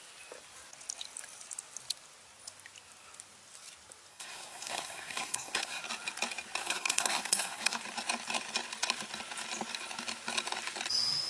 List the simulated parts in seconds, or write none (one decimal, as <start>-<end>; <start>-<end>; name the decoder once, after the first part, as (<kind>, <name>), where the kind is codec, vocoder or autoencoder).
4.1-5.8 (codec, SNAC); 6.6-7.8